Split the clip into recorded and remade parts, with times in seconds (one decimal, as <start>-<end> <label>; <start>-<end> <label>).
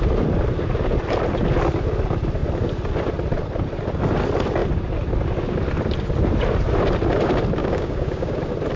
0.0-7.6 recorded; 7.6-8.4 remade; 8.4-8.8 recorded